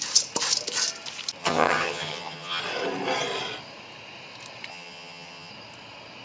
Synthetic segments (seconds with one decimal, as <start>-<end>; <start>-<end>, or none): 1.4-2.6; 4.7-5.5

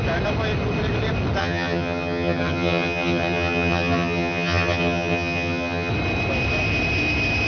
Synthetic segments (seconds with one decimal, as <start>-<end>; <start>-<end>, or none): 1.4-5.9